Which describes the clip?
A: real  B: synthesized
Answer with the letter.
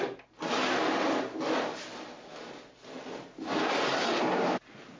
A